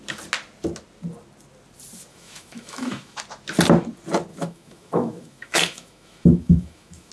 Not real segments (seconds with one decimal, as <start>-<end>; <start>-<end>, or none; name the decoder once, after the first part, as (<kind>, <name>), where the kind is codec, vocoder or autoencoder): 2.1-3.2 (autoencoder, DAC-VAE); 4.3-7.1